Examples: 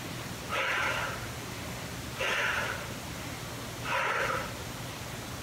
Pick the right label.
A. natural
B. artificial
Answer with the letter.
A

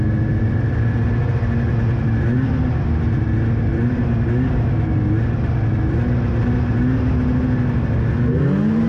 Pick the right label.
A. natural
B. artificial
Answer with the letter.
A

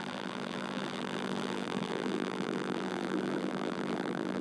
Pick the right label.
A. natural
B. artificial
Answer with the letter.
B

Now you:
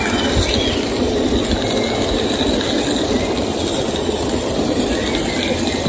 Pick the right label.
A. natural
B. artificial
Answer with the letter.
A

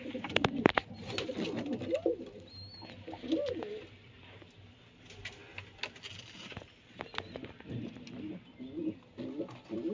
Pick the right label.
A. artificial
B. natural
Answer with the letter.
B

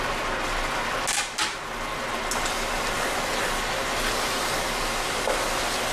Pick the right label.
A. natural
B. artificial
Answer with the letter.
A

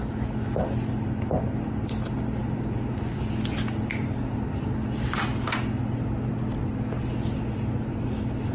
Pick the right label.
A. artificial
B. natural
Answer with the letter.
B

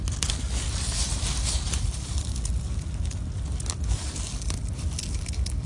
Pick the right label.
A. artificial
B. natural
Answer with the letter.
B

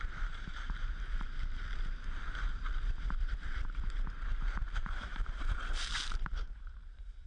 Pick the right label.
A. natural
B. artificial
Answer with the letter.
B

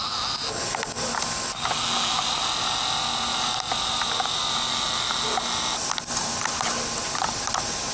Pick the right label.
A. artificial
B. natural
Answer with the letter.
B